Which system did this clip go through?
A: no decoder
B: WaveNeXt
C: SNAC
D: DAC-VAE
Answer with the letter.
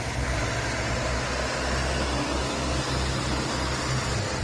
A